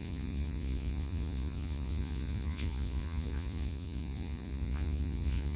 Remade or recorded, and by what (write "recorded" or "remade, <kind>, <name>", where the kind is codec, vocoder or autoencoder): remade, vocoder, Vocos